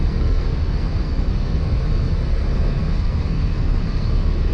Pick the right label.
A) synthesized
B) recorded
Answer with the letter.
A